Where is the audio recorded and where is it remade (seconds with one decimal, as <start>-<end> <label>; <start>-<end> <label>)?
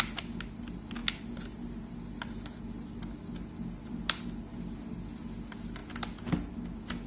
0.0-7.1 recorded